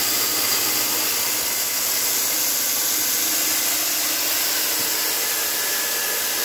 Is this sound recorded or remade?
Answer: recorded